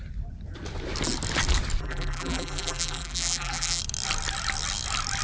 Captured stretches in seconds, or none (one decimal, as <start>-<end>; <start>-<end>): 0.0-1.8; 3.8-5.2